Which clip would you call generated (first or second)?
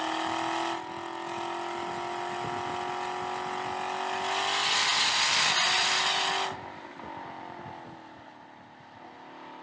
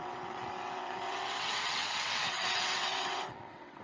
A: second